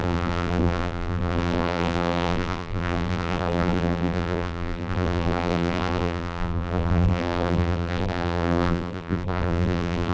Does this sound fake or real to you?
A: fake